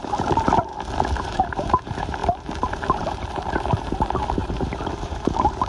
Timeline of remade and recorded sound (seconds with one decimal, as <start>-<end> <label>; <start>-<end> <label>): 0.0-0.7 remade; 0.7-1.2 recorded; 1.2-5.7 remade